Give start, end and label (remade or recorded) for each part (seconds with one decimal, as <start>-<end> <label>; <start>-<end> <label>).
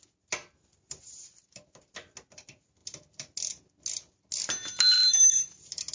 0.0-5.9 recorded